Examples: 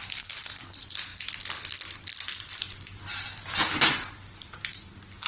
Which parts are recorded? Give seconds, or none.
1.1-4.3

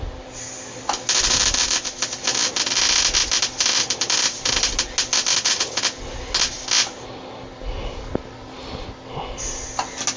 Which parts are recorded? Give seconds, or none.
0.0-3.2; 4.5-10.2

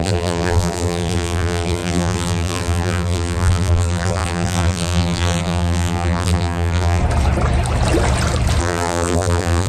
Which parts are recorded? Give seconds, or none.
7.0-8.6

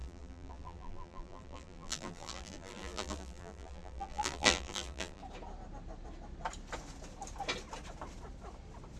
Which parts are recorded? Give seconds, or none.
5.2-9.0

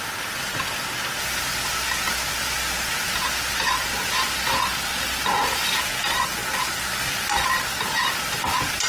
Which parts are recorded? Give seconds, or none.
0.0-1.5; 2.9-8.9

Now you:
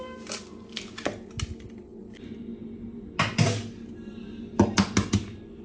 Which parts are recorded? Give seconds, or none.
0.0-5.6

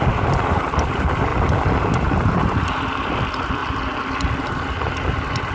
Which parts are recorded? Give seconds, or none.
1.3-2.4; 3.6-4.3